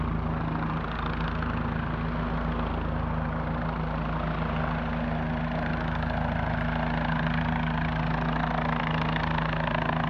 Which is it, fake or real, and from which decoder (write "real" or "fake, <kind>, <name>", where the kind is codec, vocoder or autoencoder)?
real